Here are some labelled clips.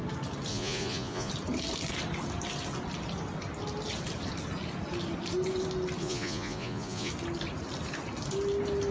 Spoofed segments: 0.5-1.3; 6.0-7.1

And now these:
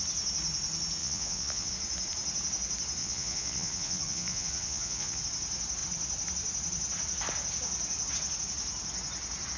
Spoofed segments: 1.0-1.7; 3.0-5.2